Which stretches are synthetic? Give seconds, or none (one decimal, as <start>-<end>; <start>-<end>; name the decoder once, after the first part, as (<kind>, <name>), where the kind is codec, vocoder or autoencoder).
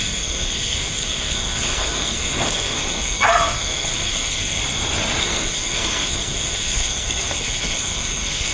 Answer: 0.0-4.6 (codec, SNAC); 5.2-8.5